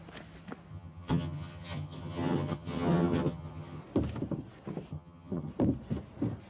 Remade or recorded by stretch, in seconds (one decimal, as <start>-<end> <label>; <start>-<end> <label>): 0.0-0.7 recorded; 0.7-3.8 remade; 3.8-4.9 recorded; 4.9-5.5 remade; 5.5-6.5 recorded